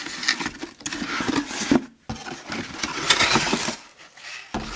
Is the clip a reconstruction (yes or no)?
no